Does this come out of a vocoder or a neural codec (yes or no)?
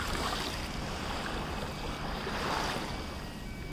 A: no